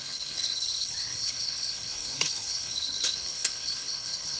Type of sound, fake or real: fake